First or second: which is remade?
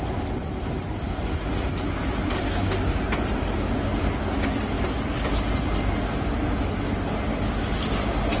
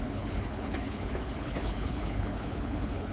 second